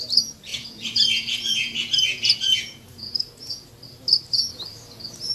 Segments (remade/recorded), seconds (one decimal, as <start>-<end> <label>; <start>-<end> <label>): 0.0-0.5 recorded; 0.5-3.7 remade; 3.7-5.3 recorded